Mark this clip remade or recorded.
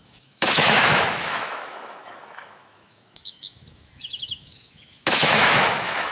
remade